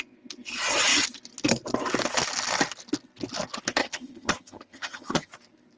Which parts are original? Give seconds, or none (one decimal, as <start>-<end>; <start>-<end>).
0.0-3.8; 5.3-5.8

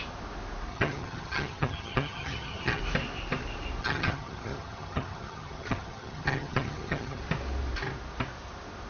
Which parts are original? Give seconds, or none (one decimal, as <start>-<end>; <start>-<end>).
0.0-0.7; 2.8-3.8; 7.2-8.9

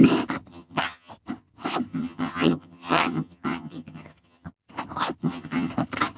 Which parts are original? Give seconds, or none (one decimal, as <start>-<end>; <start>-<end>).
0.0-0.5; 1.1-1.9; 4.5-5.2; 5.7-6.2